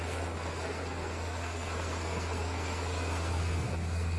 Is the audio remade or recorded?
remade